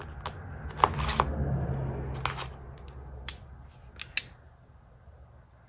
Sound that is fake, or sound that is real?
real